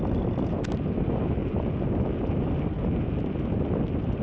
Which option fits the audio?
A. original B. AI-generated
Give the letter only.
A